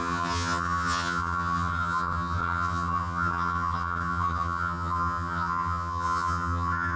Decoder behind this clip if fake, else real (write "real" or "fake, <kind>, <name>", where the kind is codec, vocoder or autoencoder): fake, vocoder, HiFi-GAN